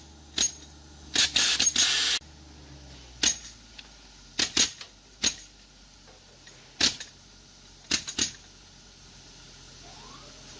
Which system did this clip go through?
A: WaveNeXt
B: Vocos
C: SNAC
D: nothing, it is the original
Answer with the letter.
D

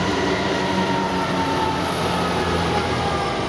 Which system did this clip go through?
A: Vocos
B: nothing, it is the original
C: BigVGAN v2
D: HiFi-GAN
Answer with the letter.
C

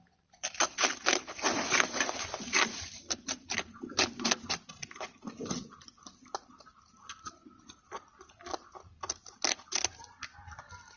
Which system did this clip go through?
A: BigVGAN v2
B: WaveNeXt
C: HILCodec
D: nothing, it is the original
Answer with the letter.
A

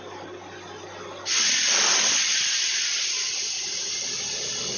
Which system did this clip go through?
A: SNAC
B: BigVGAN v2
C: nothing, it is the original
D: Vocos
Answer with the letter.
C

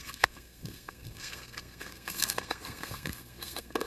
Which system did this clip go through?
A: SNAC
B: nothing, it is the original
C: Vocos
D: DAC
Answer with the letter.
A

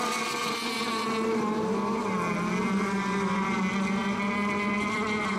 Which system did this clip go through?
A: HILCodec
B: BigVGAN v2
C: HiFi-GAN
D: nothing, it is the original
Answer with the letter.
D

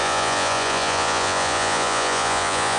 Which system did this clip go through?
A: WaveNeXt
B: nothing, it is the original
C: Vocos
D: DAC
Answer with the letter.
C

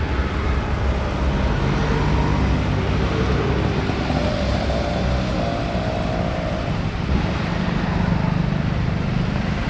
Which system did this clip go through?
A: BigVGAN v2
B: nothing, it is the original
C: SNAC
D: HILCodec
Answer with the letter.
B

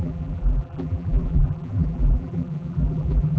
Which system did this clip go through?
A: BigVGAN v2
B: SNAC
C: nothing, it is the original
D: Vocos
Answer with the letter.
A